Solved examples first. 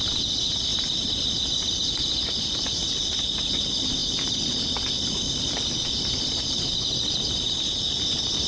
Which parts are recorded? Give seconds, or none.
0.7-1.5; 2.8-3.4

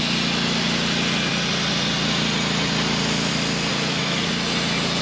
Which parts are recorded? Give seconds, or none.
0.0-3.7; 4.3-5.0

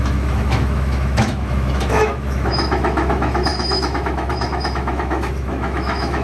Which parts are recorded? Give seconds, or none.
none